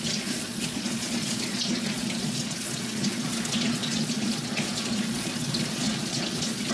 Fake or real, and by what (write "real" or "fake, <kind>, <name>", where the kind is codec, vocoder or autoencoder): fake, vocoder, Vocos